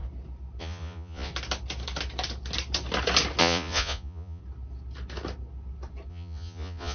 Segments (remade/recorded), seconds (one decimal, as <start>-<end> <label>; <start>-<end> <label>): 0.0-0.6 recorded; 0.6-1.3 remade; 1.3-3.4 recorded; 3.4-4.4 remade; 4.4-6.1 recorded; 6.1-6.9 remade